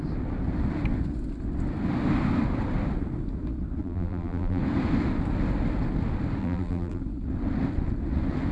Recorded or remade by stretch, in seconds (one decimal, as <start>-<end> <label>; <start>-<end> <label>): 0.0-3.8 recorded; 3.8-4.6 remade; 4.6-6.4 recorded; 6.4-7.0 remade; 7.0-8.5 recorded